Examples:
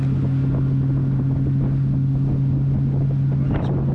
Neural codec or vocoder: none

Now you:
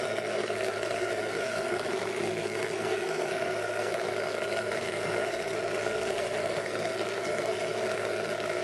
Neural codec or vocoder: codec, SNAC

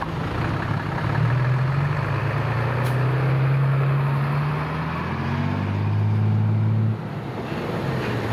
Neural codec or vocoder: none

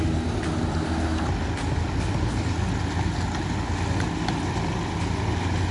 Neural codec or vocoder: none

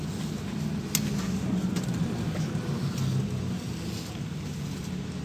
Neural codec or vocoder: none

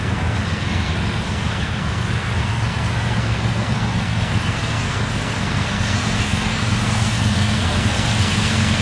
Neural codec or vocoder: codec, SNAC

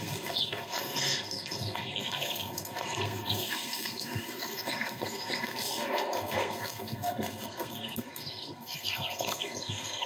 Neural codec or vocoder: codec, SNAC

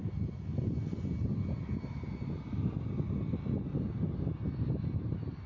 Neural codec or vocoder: none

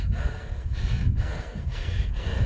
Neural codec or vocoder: codec, SNAC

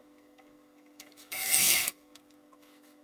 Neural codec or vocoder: codec, SNAC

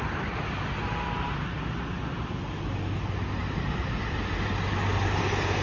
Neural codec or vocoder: none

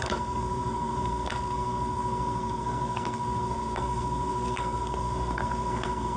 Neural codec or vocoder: codec, SNAC